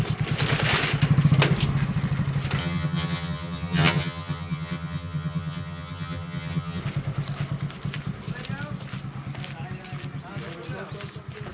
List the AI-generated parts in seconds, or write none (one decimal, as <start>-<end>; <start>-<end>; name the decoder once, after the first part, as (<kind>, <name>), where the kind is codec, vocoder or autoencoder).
2.6-6.8 (vocoder, HiFi-GAN)